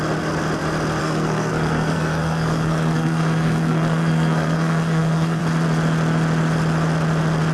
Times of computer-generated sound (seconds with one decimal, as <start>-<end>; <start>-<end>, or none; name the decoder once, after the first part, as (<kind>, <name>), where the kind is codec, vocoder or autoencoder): 1.0-5.4 (codec, SNAC)